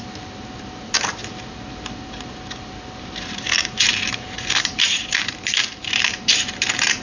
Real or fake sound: fake